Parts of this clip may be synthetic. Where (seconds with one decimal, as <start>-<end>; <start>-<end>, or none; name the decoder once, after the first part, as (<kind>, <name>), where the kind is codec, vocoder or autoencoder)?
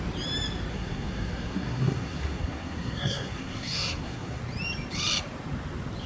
0.7-4.4 (codec, SNAC)